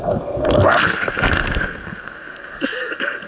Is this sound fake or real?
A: fake